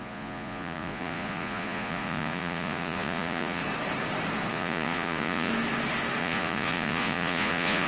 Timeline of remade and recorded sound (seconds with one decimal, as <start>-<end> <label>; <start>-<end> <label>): 0.0-3.6 remade; 3.6-4.5 recorded; 4.5-5.5 remade; 5.5-6.2 recorded; 6.2-7.9 remade